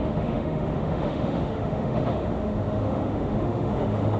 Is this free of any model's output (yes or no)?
no